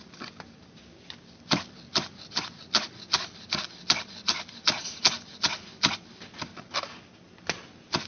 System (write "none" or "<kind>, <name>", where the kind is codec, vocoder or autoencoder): none